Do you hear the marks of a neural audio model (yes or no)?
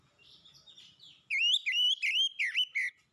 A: no